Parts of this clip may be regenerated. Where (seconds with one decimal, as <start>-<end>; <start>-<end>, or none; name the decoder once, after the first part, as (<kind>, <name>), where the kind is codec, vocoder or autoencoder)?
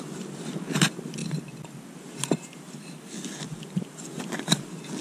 none